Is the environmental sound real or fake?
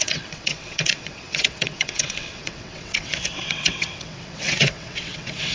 fake